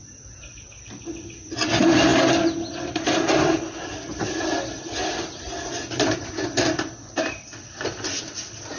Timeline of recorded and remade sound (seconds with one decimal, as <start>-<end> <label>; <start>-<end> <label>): 0.0-8.8 recorded